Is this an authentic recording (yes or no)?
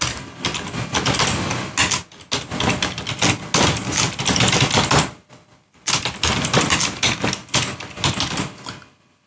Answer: yes